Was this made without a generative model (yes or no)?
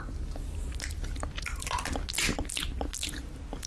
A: yes